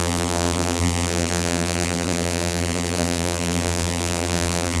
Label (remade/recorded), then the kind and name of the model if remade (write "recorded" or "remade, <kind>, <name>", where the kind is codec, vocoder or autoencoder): remade, vocoder, BigVGAN v2